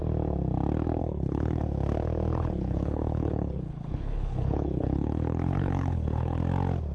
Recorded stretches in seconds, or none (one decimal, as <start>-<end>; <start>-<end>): 0.0-1.0; 1.6-2.3; 6.4-6.9